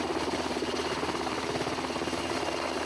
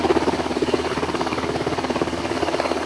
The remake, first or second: second